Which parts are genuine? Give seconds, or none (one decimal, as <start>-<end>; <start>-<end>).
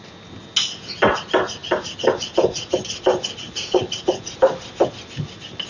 0.0-1.6; 4.9-5.7